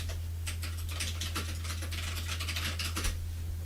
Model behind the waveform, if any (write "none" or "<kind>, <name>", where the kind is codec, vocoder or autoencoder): none